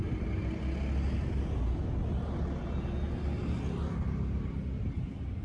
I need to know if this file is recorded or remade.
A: recorded